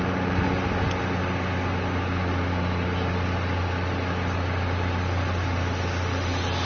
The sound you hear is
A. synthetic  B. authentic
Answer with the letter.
B